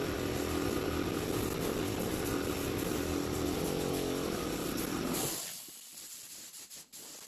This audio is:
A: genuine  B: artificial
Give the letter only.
A